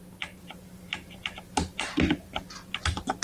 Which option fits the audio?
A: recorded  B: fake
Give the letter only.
A